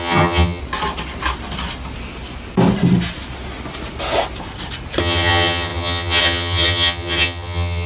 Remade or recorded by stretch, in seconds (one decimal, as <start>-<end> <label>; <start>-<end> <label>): 0.0-0.6 remade; 0.6-5.0 recorded; 5.0-7.9 remade